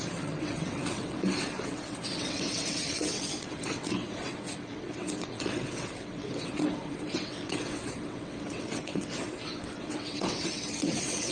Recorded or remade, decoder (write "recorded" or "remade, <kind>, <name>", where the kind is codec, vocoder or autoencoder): remade, vocoder, WaveNeXt